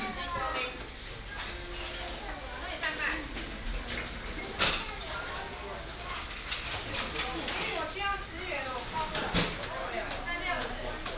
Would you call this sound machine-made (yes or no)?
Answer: no